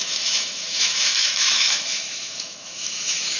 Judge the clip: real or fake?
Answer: fake